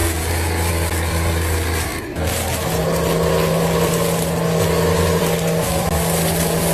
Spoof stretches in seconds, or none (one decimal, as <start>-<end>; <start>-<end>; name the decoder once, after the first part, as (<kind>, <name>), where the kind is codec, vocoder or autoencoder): none